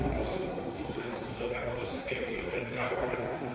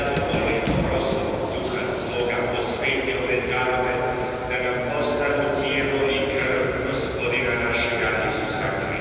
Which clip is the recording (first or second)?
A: second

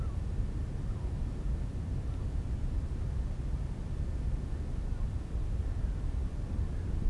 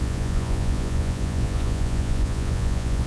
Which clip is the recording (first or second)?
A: first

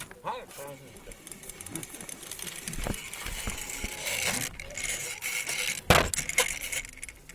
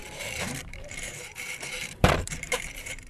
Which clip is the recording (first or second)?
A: first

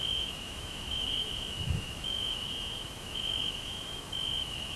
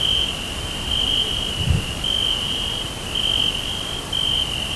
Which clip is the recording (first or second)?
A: second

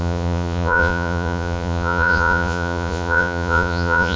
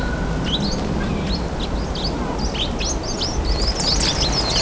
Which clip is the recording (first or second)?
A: second